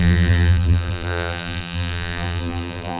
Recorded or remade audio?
remade